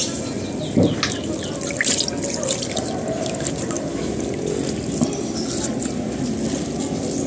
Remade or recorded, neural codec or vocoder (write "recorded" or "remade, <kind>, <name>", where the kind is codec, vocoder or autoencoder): recorded